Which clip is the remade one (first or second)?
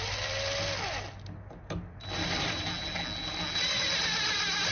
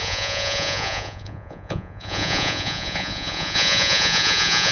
second